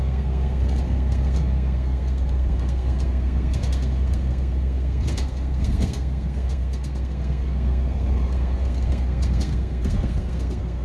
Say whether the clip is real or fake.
fake